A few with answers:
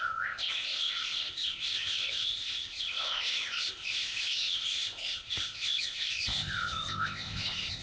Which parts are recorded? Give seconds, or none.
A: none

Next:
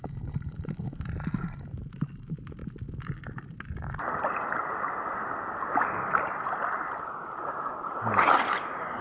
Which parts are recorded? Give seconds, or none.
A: 0.0-9.0

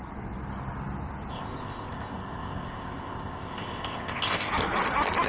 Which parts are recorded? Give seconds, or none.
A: 0.0-1.3; 4.5-5.3

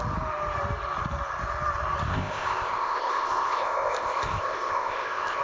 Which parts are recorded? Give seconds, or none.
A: 0.0-2.1